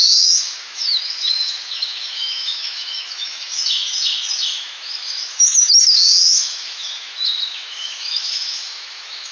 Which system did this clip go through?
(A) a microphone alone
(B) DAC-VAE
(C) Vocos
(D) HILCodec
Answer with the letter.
B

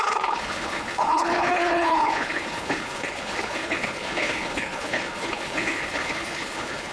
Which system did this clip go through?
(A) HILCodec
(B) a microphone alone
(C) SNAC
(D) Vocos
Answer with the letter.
A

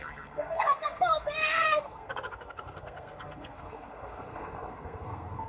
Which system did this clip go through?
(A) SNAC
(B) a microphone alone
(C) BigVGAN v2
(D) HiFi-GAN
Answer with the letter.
A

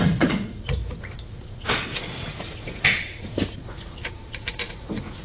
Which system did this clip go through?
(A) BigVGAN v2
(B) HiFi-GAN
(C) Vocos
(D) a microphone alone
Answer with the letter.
C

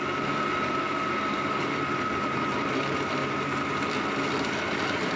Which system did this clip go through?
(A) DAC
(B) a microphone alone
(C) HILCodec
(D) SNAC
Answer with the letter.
B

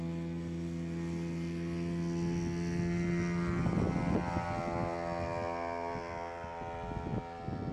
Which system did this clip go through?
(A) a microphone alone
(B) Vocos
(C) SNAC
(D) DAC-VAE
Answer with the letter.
A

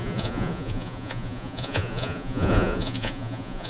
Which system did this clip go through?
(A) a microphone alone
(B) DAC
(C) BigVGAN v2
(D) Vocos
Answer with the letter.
D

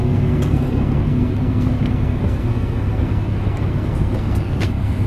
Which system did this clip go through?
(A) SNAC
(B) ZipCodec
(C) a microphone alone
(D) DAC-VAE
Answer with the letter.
A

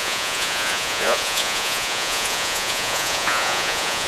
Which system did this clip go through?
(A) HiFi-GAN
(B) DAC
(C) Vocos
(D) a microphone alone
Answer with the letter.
C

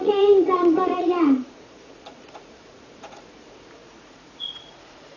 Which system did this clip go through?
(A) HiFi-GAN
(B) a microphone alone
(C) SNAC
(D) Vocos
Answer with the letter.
D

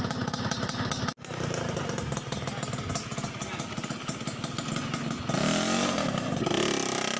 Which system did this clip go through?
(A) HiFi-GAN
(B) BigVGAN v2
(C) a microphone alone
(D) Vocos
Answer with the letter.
C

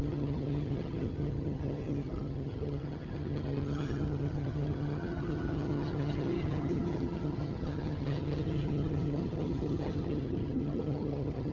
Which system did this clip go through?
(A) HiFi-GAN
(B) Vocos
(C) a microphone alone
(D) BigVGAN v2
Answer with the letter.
A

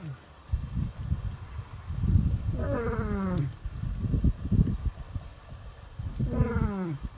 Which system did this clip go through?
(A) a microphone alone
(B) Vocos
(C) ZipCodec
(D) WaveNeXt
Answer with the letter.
A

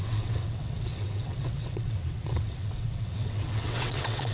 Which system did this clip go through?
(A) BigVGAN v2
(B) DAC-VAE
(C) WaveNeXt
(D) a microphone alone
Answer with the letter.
C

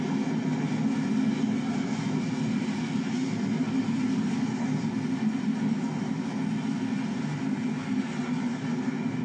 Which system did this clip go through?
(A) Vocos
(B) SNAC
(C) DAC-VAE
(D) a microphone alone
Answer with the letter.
D